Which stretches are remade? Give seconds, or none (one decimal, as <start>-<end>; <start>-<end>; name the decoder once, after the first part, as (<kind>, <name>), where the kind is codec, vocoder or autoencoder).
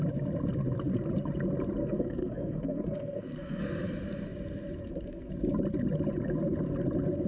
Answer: 1.8-3.6 (codec, SNAC); 4.8-5.3